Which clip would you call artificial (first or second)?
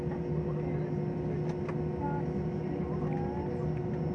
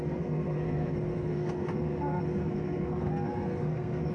second